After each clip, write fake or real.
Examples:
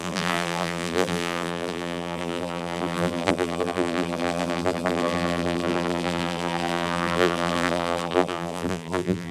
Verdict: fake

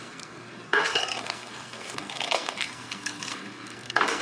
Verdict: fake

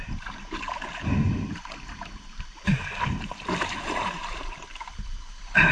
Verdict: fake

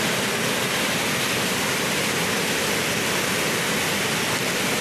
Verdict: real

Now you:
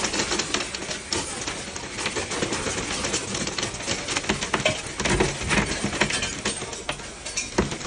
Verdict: real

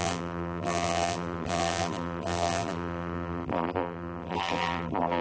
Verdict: fake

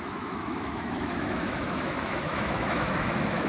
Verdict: fake